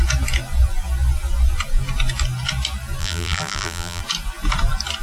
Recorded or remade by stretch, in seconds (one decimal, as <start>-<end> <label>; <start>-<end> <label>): 0.0-3.0 recorded; 3.0-4.0 remade; 4.0-5.0 recorded